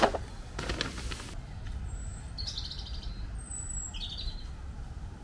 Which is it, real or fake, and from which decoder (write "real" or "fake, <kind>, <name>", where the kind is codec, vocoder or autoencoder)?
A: real